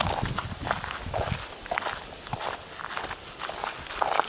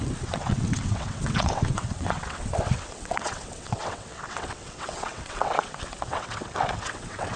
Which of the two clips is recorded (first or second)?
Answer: first